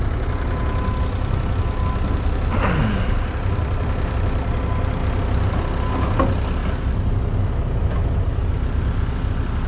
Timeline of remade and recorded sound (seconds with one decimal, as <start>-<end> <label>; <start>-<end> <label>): 0.0-9.7 recorded